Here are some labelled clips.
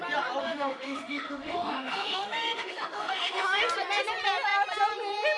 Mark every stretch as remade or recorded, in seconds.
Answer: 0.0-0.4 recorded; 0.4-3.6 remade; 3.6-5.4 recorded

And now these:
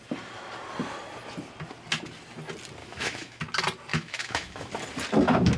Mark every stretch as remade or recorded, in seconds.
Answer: 0.0-2.8 recorded; 2.8-3.4 remade; 3.4-3.9 recorded; 3.9-4.7 remade; 4.7-5.6 recorded

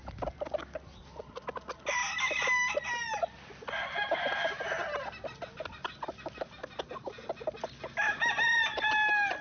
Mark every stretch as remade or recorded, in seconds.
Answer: 0.0-9.4 recorded

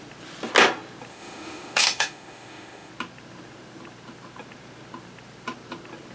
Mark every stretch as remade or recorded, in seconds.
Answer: 0.0-1.1 recorded; 1.1-2.9 remade; 2.9-6.1 recorded

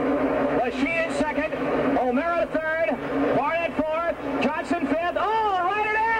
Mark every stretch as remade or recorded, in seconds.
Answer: 0.0-2.4 remade; 2.4-5.6 recorded; 5.6-6.2 remade

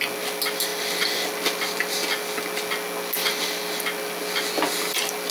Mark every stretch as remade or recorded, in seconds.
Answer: 0.0-5.3 recorded